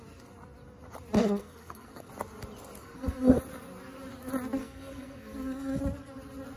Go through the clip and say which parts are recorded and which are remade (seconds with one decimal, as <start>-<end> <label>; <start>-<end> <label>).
0.0-1.2 recorded; 1.2-2.1 remade; 2.1-2.8 recorded; 2.8-3.4 remade; 3.4-4.6 recorded; 4.6-5.8 remade; 5.8-6.6 recorded